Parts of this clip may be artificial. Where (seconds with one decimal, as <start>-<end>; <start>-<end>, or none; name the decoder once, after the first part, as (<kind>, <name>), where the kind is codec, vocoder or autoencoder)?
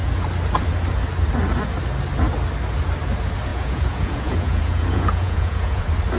3.5-5.8 (vocoder, Vocos)